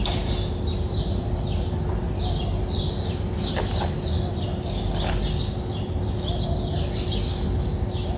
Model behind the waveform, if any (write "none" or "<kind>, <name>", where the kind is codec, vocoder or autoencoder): none